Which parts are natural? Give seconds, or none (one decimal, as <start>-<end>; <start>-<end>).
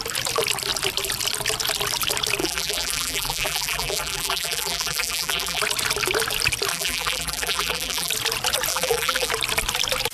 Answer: 0.0-2.4; 5.6-6.7; 8.1-8.7; 9.3-10.1